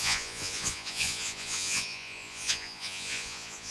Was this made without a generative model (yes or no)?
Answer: no